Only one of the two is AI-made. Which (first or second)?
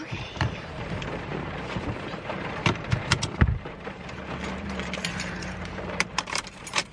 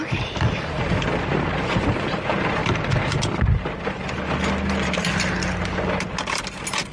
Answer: first